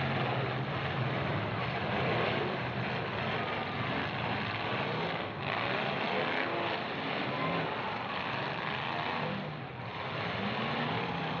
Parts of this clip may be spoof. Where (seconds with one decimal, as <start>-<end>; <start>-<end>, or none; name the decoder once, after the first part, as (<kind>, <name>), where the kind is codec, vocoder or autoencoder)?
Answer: none